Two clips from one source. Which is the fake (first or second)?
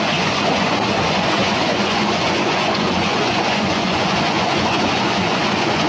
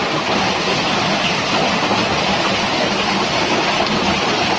first